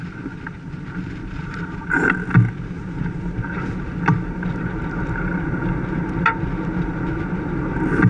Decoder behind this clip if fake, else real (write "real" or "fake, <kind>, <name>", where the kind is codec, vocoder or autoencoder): real